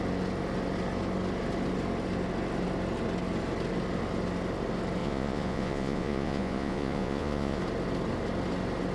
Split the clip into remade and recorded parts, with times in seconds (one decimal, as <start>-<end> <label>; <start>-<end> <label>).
0.0-5.0 recorded; 5.0-7.6 remade; 7.6-8.9 recorded